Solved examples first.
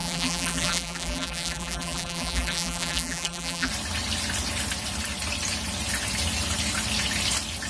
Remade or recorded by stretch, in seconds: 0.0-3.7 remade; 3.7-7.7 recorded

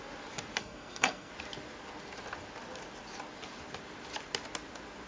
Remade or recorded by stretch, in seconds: 0.0-0.6 recorded; 0.6-1.3 remade; 1.3-5.1 recorded

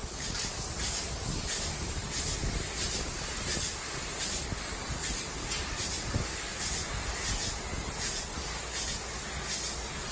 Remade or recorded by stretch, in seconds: 0.0-10.1 recorded

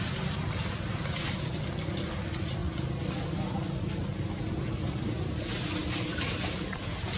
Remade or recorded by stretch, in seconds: 0.0-7.2 recorded

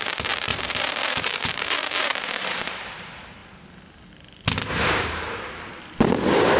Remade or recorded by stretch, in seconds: 0.0-0.5 recorded; 0.5-2.7 remade; 2.7-6.6 recorded